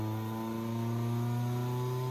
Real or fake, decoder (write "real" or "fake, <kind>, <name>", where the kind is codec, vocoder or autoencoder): real